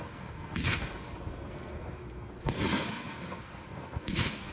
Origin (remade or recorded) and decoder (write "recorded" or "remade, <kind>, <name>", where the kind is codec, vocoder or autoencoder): remade, codec, SNAC